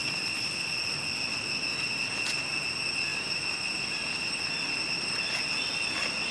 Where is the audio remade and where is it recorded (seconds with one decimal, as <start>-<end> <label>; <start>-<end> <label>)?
0.0-0.7 remade; 0.7-3.1 recorded; 3.1-5.3 remade; 5.3-6.3 recorded